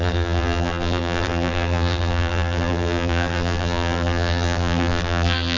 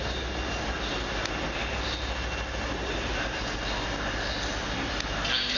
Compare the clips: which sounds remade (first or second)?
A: first